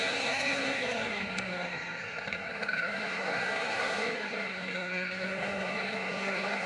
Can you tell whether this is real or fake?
fake